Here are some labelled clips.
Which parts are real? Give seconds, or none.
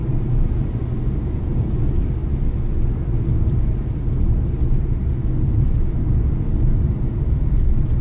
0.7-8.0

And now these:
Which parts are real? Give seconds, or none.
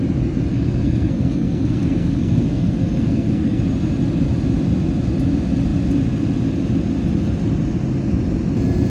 0.0-0.5; 3.6-8.9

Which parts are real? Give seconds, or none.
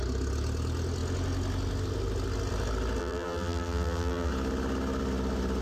0.0-3.0; 4.3-5.6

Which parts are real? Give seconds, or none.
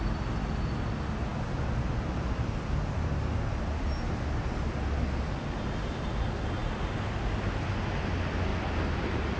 0.0-9.4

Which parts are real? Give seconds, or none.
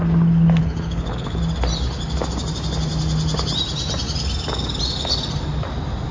0.0-0.6; 1.4-6.1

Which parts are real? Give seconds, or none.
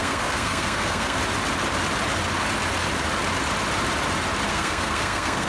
1.2-4.5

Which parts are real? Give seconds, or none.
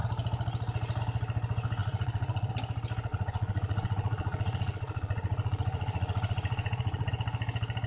0.0-1.8; 2.5-3.1; 7.1-7.9